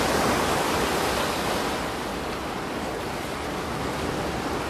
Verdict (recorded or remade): recorded